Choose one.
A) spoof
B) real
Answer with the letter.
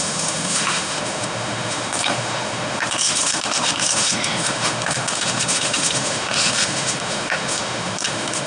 A